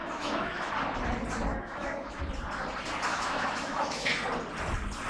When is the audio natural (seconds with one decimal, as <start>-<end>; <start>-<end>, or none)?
0.7-1.5; 2.2-3.1; 4.1-5.1